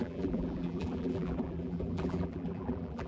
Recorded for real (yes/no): no